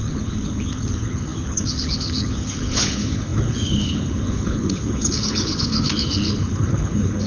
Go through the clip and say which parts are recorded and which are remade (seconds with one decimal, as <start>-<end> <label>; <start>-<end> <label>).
0.0-7.3 remade